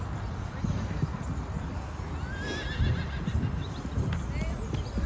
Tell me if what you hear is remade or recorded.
recorded